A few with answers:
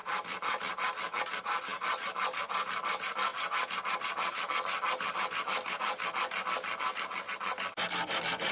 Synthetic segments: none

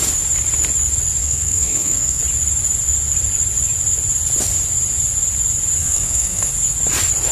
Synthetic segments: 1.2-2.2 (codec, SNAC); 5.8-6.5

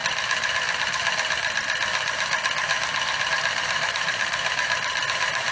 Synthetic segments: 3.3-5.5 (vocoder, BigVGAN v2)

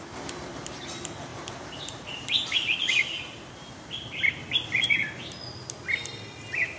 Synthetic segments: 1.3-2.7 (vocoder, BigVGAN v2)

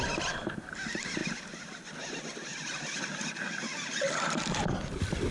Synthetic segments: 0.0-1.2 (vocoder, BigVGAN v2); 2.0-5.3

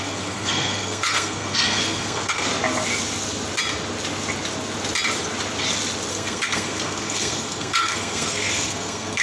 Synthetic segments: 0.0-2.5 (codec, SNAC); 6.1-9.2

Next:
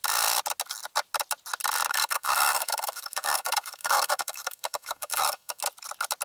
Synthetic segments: 1.9-5.6 (codec, SNAC)

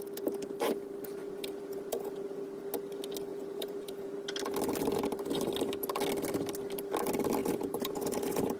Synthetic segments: 1.2-2.6 (vocoder, Vocos); 3.3-4.1; 7.4-8.6